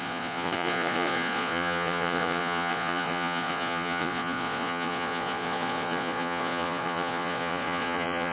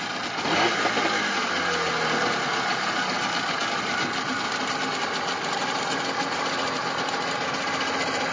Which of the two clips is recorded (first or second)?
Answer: second